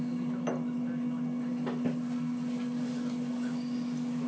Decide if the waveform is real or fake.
real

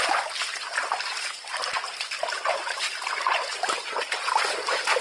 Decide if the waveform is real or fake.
real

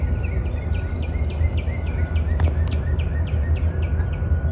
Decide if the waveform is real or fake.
real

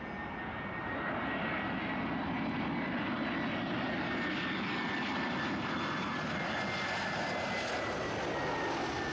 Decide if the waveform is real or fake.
real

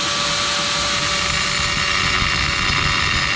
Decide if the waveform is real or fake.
real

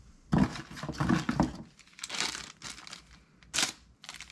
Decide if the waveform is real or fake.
real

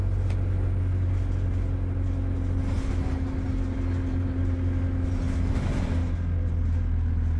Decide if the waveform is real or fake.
real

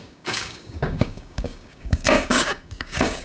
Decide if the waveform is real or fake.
fake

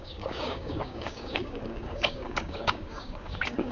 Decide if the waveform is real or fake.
fake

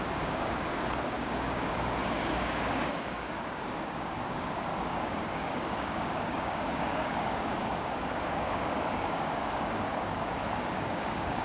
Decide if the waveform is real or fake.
fake